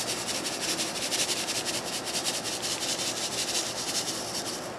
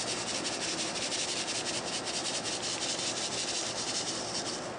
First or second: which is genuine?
second